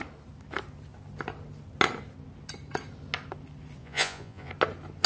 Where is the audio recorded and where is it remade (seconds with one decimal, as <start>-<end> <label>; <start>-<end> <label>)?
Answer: 0.0-3.8 recorded; 3.8-4.5 remade; 4.5-5.1 recorded